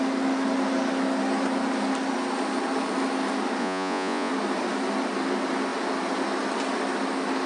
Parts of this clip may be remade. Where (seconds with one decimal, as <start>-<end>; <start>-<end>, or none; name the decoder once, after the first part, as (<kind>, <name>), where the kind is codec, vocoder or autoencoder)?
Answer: 3.6-4.3 (vocoder, Vocos)